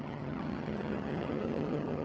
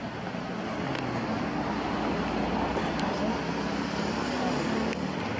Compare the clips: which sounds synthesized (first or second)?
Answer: first